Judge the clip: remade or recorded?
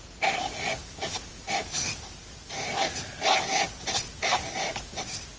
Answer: recorded